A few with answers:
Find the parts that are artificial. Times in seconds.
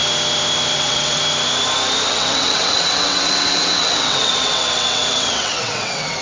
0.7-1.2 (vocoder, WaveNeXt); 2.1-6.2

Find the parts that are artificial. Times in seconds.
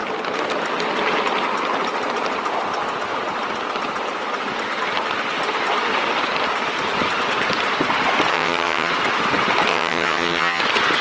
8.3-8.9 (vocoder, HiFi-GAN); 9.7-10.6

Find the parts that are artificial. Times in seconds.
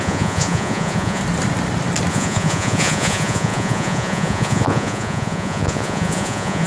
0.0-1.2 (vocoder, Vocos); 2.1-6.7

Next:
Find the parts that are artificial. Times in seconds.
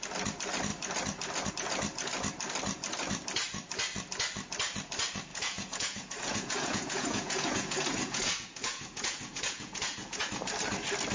5.3-10.3 (vocoder, Vocos)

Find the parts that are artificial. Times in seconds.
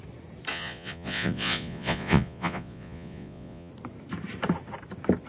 0.5-3.7 (vocoder, Vocos)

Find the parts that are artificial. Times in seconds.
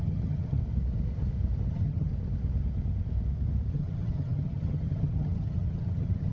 0.0-0.6 (vocoder, HiFi-GAN); 1.7-2.1; 3.7-6.3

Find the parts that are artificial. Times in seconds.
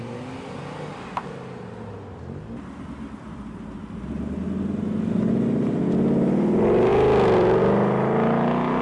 none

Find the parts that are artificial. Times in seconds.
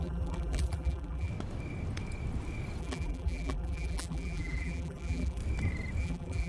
0.0-1.3 (vocoder, BigVGAN v2); 2.8-5.4; 6.0-6.5